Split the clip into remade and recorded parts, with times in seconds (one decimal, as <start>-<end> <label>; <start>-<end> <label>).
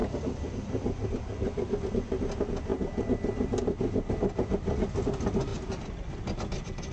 0.0-1.8 remade; 1.8-5.5 recorded; 5.5-6.9 remade